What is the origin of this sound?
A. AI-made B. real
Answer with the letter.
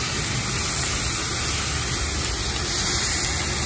B